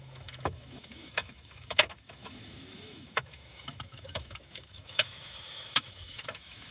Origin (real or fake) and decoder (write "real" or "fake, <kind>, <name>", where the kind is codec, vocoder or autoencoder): fake, autoencoder, DAC-VAE